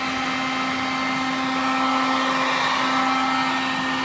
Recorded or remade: recorded